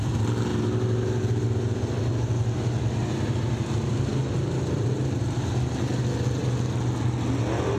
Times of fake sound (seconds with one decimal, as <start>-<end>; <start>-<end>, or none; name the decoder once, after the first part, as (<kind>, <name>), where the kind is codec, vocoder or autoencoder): none